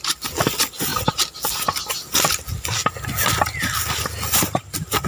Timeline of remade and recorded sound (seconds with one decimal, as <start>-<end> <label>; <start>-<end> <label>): 0.0-5.1 recorded